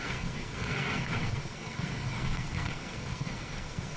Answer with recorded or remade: remade